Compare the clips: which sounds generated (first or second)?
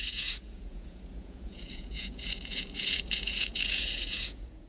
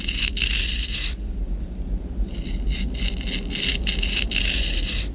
first